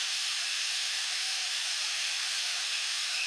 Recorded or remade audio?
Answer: remade